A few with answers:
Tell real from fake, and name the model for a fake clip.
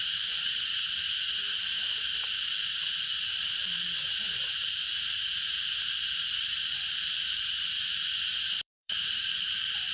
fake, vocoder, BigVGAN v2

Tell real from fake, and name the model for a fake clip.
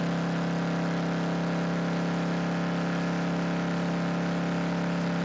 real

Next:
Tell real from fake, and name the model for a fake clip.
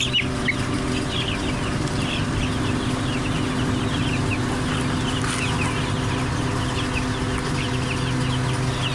real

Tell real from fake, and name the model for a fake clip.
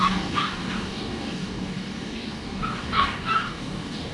fake, codec, DAC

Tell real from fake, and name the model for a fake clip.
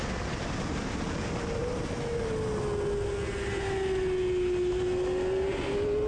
real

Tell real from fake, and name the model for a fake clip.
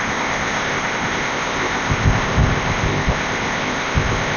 fake, codec, ZipCodec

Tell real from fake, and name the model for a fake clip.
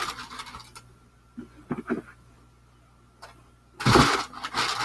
real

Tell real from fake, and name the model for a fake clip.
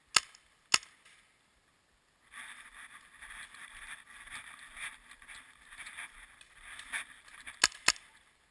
real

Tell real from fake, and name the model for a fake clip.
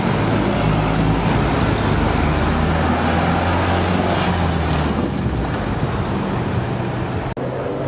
real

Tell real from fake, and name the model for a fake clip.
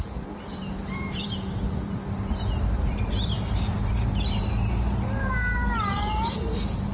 fake, vocoder, BigVGAN v2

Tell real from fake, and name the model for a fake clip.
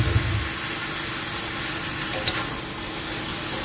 real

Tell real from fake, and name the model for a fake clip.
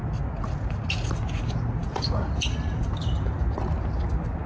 real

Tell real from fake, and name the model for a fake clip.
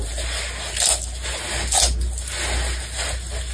real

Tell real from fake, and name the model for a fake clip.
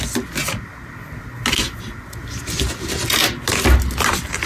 real